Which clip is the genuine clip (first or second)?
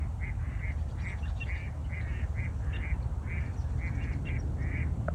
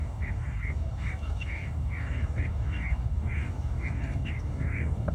first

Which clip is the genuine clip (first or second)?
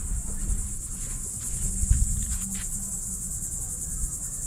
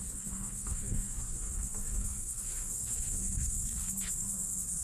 first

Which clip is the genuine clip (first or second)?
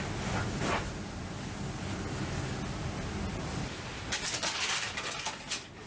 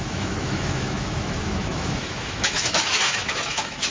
first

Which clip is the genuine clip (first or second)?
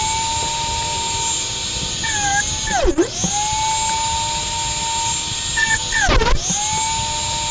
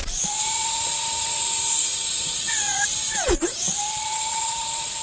first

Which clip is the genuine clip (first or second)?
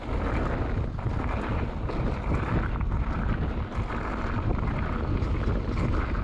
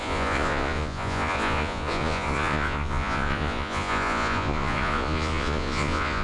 first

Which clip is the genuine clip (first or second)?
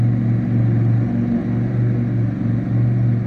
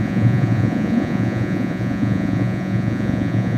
first